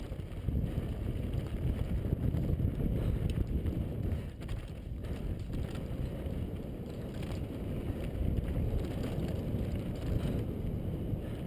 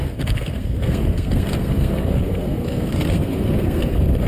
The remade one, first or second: second